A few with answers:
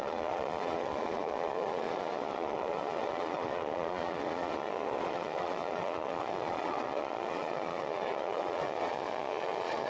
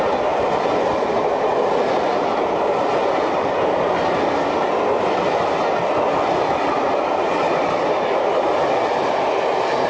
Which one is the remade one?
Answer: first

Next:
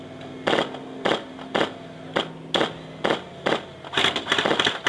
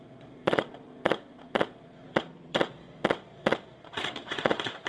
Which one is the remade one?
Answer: second